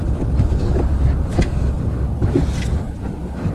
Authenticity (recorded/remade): recorded